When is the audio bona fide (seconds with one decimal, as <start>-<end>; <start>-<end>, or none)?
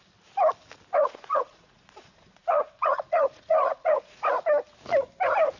0.0-1.0; 4.3-5.6